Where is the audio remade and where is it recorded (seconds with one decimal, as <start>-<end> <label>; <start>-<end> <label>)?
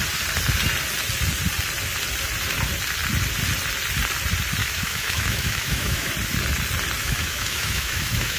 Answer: 0.0-4.6 recorded; 4.6-6.1 remade; 6.1-7.0 recorded; 7.0-8.4 remade